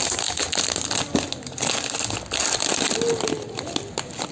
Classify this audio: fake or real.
real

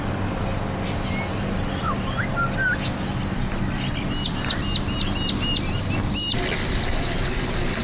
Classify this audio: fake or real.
real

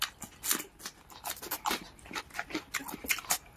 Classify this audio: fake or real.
real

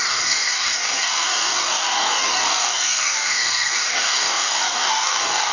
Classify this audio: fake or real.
fake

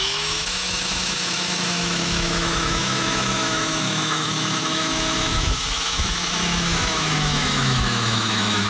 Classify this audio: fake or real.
fake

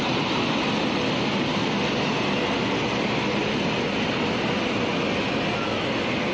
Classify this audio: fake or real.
real